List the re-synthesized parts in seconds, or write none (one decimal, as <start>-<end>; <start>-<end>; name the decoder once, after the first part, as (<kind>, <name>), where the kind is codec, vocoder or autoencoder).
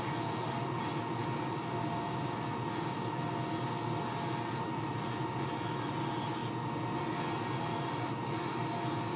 none